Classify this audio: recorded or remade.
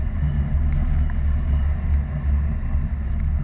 recorded